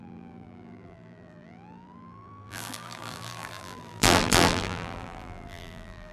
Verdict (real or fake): fake